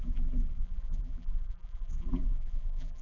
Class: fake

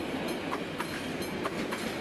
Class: real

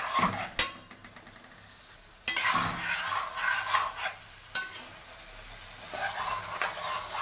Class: real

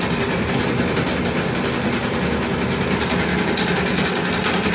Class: real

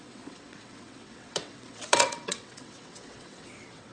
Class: fake